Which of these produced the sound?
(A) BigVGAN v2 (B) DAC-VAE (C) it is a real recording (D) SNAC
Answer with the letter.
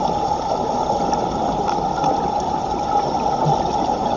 C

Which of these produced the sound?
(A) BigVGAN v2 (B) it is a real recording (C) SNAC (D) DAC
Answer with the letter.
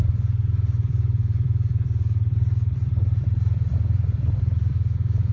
A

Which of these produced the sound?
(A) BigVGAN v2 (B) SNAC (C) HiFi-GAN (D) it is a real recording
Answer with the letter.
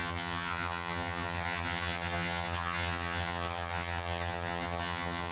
C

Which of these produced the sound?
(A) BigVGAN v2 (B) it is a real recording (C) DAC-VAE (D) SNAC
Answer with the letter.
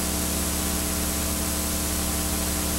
B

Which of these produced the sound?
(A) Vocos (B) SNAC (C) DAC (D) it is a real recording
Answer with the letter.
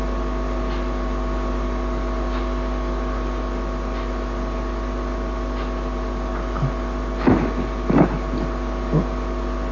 D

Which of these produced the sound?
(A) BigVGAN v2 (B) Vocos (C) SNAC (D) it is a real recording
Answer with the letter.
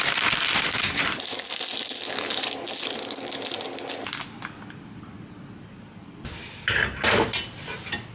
D